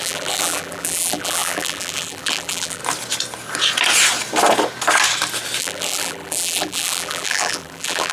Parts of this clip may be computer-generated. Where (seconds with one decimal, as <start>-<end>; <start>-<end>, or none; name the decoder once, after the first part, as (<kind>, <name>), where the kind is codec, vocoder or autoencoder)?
0.0-2.8 (vocoder, BigVGAN v2); 5.6-8.1